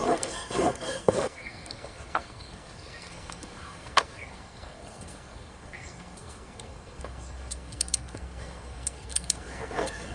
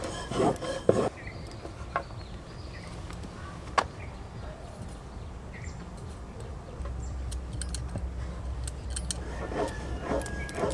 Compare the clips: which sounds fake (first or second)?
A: first